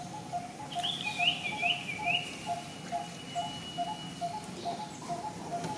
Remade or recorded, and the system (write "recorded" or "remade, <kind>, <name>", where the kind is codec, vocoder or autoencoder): recorded